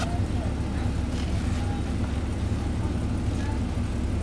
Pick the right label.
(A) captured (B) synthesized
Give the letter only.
A